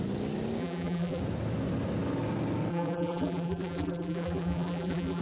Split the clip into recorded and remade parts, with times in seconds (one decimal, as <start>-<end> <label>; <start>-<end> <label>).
0.0-0.6 recorded; 0.6-1.2 remade; 1.2-2.7 recorded; 2.7-5.2 remade